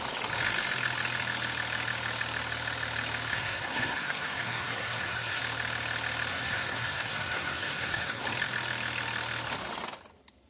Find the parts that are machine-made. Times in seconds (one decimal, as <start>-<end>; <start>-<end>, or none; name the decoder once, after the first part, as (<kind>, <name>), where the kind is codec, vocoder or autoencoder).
3.3-5.4 (codec, SNAC); 6.3-8.2